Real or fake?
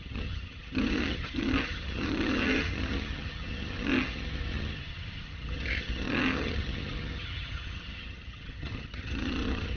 fake